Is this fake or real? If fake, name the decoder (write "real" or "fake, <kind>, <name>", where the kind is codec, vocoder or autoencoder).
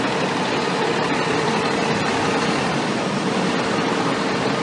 real